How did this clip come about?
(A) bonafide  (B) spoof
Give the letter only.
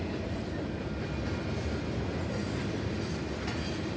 A